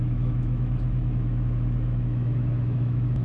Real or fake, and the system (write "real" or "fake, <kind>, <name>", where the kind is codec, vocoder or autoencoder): fake, autoencoder, DAC-VAE